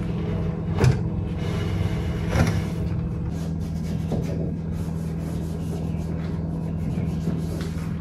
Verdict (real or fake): real